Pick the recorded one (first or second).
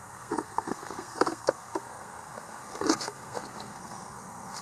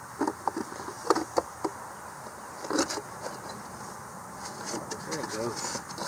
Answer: second